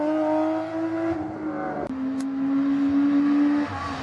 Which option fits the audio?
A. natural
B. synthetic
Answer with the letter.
A